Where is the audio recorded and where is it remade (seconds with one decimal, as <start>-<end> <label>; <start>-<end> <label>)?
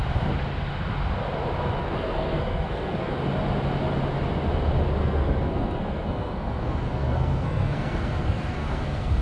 0.0-1.8 recorded; 1.8-3.1 remade; 3.1-5.0 recorded; 5.0-9.2 remade